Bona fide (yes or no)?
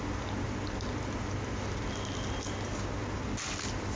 yes